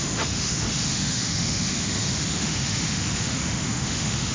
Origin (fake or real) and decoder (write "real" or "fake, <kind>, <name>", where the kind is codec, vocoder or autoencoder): fake, autoencoder, DAC-VAE